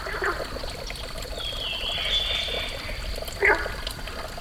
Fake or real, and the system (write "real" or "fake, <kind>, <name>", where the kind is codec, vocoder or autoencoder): real